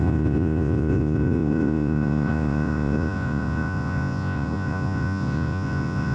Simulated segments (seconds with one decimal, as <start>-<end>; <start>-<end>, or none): 0.0-6.1